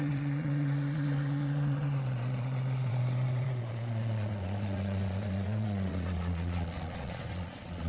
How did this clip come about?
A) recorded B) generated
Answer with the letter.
B